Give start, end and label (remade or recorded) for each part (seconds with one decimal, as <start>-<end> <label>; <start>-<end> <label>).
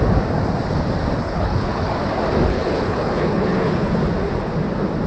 0.0-1.2 recorded; 1.2-1.9 remade; 1.9-2.5 recorded; 2.5-4.0 remade; 4.0-5.1 recorded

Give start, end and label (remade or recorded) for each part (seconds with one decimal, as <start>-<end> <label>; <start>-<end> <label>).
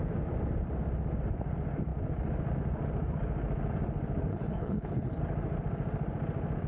0.0-4.3 recorded; 4.3-5.2 remade; 5.2-6.7 recorded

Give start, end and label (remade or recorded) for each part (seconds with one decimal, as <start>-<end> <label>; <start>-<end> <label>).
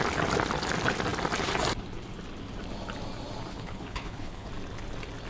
0.0-3.5 recorded; 3.5-4.5 remade; 4.5-5.3 recorded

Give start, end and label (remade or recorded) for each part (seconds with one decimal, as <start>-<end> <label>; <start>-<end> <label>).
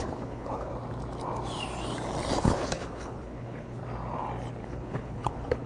0.0-0.7 remade; 0.7-2.4 recorded; 2.4-3.8 remade; 3.8-4.6 recorded; 4.6-5.7 remade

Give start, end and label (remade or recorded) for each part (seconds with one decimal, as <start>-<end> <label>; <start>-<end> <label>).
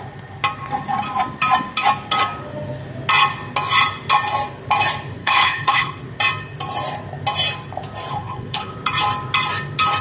0.0-5.2 recorded; 5.2-5.9 remade; 5.9-8.1 recorded; 8.1-8.7 remade; 8.7-10.0 recorded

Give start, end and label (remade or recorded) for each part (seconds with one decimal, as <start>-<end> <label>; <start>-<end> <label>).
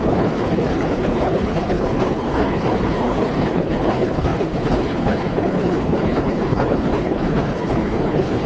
0.0-8.5 remade